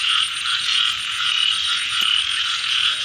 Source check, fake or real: fake